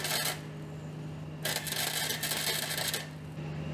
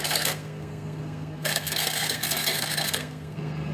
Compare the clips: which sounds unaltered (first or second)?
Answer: first